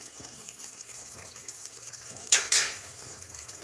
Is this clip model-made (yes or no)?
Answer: yes